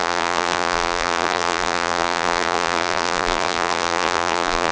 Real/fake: fake